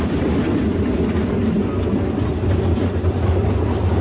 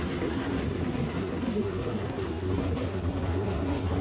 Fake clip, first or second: second